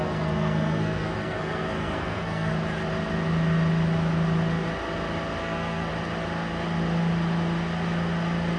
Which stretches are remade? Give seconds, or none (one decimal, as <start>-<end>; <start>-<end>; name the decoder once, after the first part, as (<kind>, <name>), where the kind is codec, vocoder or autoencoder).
0.0-2.5 (codec, SNAC); 5.4-5.9